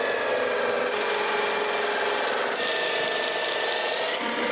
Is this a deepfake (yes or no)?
no